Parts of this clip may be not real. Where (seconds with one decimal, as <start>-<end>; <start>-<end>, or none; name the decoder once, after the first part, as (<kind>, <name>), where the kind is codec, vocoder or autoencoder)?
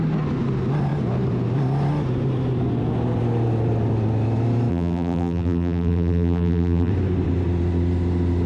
4.7-6.9 (vocoder, BigVGAN v2)